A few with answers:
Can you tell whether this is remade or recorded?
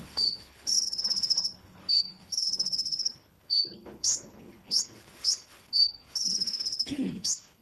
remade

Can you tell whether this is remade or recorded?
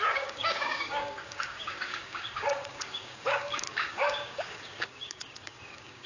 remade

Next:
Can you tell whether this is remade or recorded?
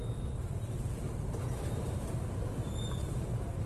recorded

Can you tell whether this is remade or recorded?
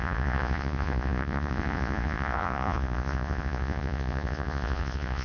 remade